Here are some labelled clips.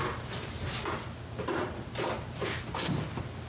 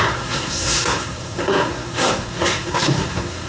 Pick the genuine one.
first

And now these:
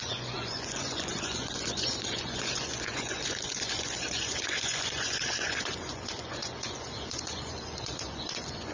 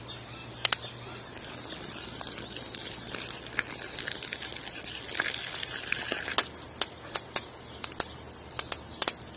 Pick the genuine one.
second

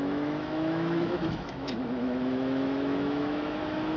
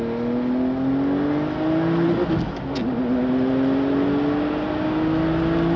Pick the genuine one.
second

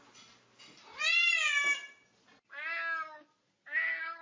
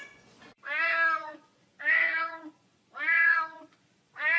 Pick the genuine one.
first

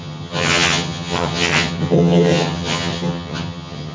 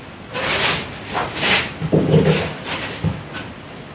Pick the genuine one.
second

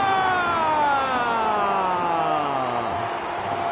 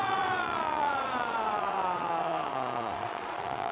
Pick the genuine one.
first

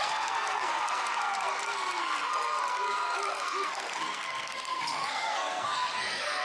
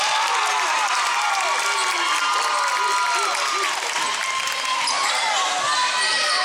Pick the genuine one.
second